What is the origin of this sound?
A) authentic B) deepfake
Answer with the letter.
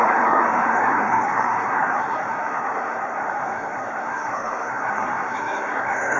B